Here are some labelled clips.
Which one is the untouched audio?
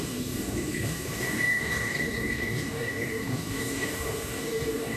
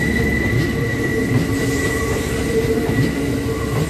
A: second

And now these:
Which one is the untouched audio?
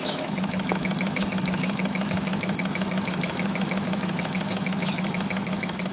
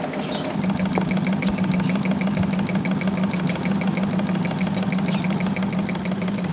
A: second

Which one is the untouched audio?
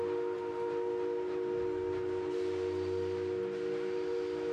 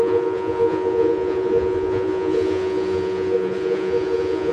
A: first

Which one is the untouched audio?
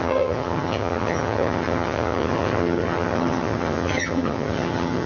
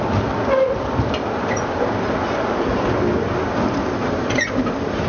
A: second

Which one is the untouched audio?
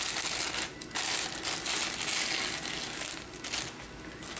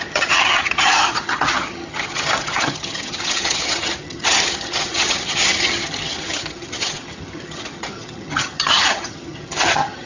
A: first